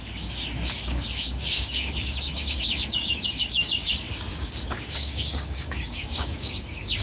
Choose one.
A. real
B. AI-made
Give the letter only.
B